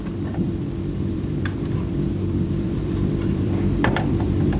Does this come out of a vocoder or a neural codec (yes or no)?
yes